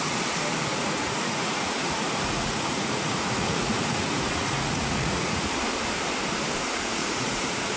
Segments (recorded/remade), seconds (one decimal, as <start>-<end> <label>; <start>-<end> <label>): 0.0-0.7 recorded; 0.7-5.4 remade; 5.4-7.0 recorded; 7.0-7.8 remade